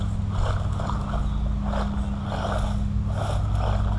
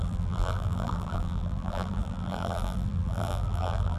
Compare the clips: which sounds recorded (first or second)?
first